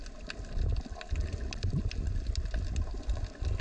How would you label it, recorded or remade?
recorded